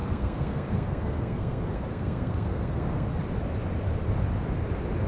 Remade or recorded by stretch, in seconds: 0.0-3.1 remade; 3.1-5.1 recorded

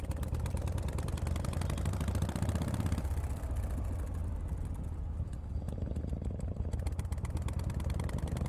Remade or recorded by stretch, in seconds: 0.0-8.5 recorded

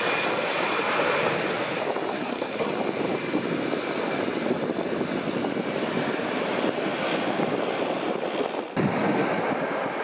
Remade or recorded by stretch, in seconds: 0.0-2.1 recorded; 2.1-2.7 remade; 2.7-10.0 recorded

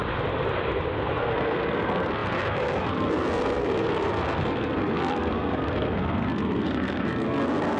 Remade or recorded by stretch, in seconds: 0.0-1.2 recorded; 1.2-7.8 remade